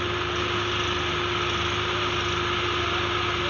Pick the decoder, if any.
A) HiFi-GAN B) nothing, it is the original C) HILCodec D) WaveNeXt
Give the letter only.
B